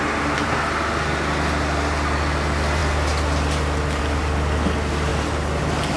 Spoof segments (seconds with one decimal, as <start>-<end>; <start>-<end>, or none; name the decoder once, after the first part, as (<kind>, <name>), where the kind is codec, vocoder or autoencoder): none